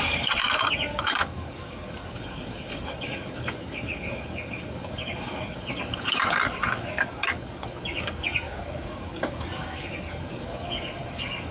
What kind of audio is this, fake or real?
fake